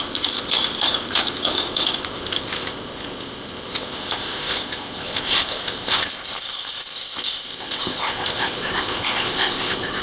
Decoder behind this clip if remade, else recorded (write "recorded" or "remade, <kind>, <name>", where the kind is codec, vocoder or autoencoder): remade, codec, ZipCodec